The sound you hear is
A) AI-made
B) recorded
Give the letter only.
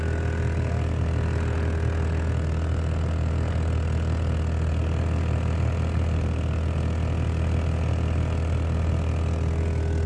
B